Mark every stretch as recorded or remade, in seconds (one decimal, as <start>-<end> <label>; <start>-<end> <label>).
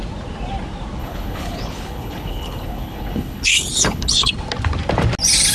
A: 0.0-1.0 recorded; 1.0-4.3 remade; 4.3-5.5 recorded